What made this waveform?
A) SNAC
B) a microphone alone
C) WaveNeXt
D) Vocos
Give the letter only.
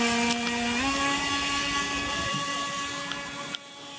B